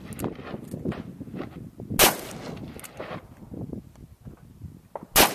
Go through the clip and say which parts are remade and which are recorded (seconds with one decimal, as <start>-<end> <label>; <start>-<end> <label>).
0.0-5.3 recorded